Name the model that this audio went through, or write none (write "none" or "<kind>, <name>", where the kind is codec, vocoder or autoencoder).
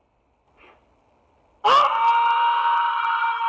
none